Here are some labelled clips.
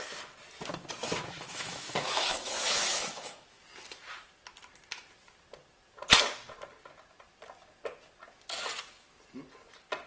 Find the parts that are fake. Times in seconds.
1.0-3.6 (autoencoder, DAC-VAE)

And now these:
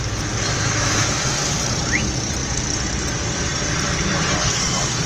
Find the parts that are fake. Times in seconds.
0.5-1.1 (autoencoder, DAC-VAE)

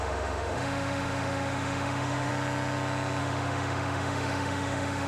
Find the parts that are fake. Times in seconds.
0.0-2.3 (autoencoder, DAC-VAE); 3.2-5.1

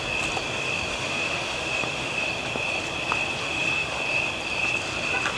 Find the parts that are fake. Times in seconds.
0.9-2.3 (autoencoder, DAC-VAE); 3.4-4.0

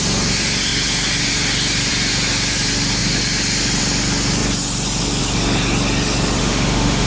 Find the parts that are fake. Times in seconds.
6.4-7.1 (autoencoder, DAC-VAE)

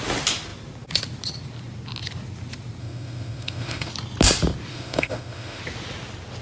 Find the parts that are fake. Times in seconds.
2.8-3.9 (autoencoder, DAC-VAE); 4.7-5.6